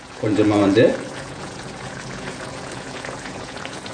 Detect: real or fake fake